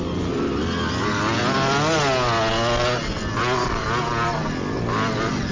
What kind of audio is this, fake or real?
real